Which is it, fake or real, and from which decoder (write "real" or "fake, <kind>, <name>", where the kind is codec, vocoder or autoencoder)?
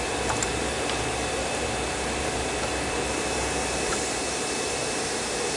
fake, vocoder, BigVGAN v2